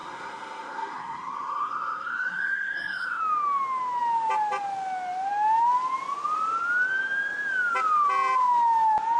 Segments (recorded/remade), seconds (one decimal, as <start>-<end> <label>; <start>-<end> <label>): 0.0-3.2 remade; 3.2-9.2 recorded